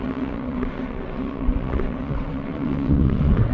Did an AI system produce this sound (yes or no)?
yes